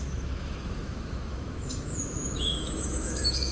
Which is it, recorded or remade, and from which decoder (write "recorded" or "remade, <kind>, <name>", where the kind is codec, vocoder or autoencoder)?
remade, autoencoder, DAC-VAE